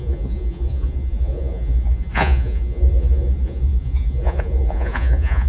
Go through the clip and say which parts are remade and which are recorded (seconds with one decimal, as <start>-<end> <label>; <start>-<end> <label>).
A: 0.0-5.5 remade